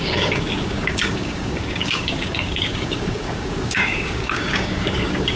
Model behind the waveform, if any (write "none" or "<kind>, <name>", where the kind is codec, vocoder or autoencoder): codec, DAC